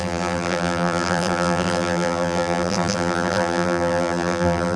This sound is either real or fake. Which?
fake